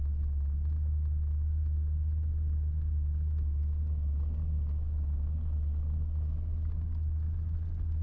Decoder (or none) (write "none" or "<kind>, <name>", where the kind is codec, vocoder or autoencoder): none